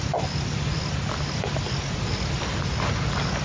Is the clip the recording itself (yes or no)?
yes